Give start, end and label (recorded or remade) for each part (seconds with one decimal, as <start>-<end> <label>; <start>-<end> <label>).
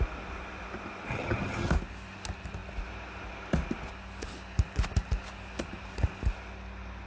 0.0-1.1 recorded; 1.1-1.7 remade; 1.7-7.1 recorded